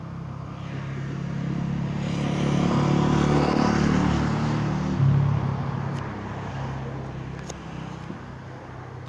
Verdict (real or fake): real